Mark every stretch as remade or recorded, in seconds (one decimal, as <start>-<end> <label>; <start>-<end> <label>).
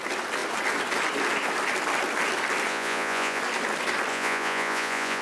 0.0-2.7 recorded; 2.7-3.4 remade; 3.4-4.1 recorded; 4.1-5.2 remade